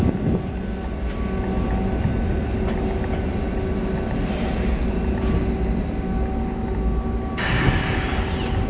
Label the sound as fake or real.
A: real